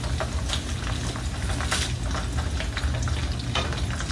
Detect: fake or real real